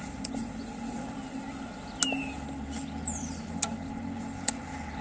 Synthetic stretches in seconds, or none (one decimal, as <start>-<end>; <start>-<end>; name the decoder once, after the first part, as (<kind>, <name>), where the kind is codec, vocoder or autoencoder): none